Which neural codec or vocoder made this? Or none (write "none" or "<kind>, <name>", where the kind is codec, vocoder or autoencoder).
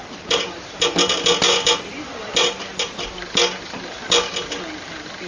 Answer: none